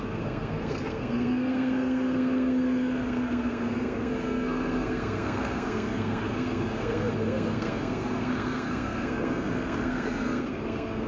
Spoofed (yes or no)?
yes